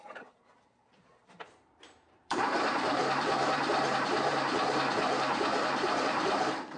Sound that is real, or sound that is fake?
fake